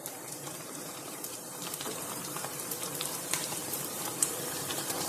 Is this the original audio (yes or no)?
no